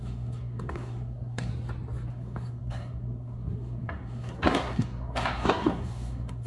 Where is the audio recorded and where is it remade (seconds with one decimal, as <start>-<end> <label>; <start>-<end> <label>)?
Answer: 0.0-1.5 remade; 1.5-2.1 recorded; 2.1-6.5 remade